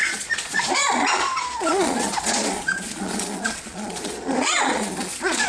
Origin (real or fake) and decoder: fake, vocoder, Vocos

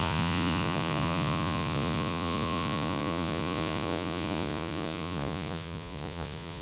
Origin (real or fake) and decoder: fake, vocoder, Vocos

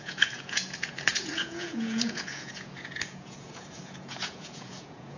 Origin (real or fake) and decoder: fake, vocoder, Vocos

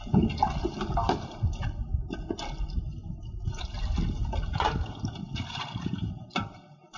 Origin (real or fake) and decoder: real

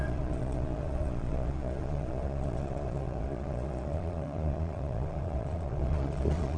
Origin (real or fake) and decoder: fake, vocoder, Vocos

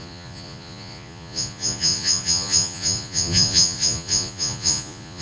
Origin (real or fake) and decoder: fake, vocoder, Vocos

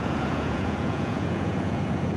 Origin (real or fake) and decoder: fake, vocoder, Vocos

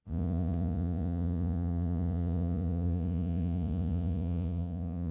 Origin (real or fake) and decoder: fake, vocoder, Vocos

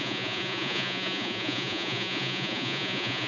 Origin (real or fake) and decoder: fake, vocoder, Vocos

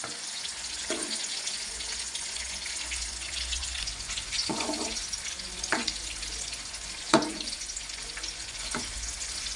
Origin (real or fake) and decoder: fake, vocoder, Vocos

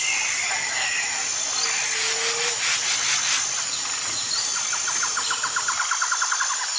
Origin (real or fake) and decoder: real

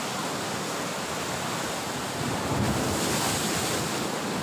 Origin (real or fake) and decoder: real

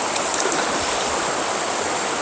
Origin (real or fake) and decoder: real